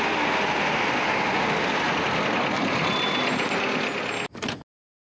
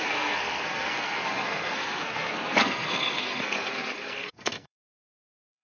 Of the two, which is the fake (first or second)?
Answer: second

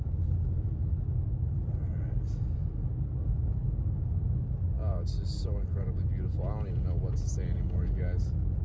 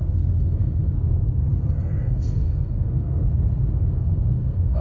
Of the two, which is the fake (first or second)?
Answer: second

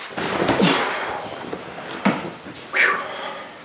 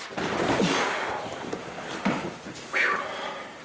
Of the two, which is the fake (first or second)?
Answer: second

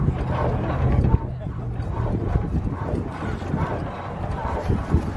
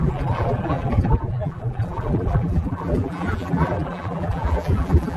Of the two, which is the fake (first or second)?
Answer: second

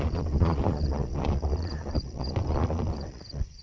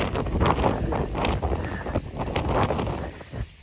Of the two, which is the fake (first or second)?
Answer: first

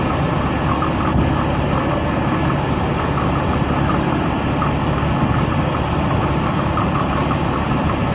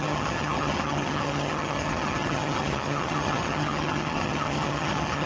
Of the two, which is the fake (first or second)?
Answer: second